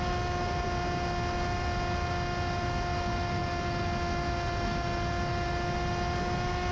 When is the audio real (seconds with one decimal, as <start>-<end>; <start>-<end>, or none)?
0.0-6.7